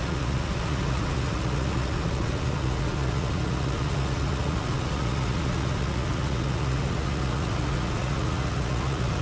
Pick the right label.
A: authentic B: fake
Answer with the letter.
B